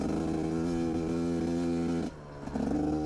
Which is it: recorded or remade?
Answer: recorded